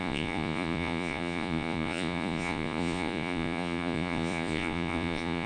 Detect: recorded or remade remade